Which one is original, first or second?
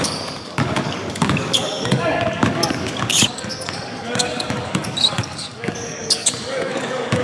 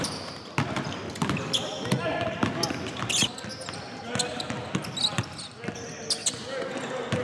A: second